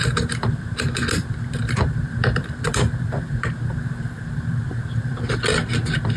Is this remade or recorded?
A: remade